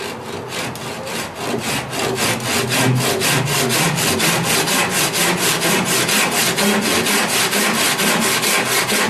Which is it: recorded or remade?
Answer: recorded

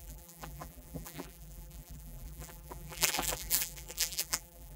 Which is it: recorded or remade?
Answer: remade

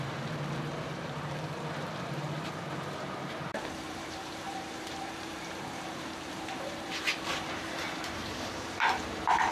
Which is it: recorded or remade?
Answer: remade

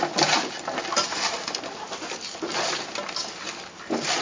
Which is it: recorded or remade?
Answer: recorded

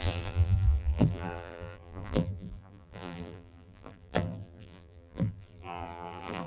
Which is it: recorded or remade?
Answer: remade